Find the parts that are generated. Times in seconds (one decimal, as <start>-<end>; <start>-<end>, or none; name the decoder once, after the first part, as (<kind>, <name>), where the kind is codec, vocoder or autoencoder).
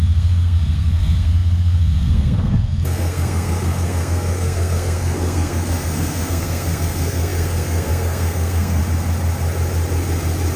0.0-8.8 (codec, SNAC)